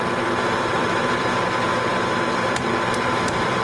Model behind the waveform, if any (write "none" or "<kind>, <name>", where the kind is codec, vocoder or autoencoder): vocoder, BigVGAN v2